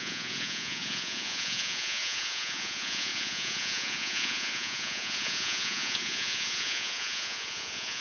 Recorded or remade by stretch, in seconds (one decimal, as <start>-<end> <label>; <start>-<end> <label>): 0.0-8.0 remade